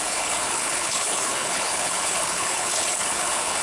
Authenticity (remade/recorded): remade